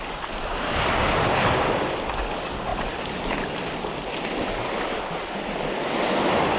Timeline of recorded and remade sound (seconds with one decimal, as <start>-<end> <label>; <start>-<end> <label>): 0.0-6.6 recorded